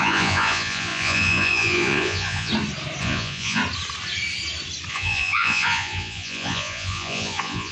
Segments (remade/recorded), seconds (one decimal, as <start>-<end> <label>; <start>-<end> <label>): 0.0-2.5 remade; 2.5-3.0 recorded; 3.0-3.6 remade; 3.6-4.9 recorded; 4.9-7.7 remade